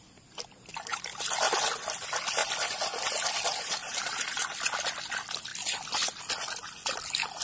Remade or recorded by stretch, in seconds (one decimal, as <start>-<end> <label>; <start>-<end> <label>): 0.0-0.7 recorded; 0.7-1.2 remade; 1.2-3.5 recorded; 3.5-4.5 remade; 4.5-7.4 recorded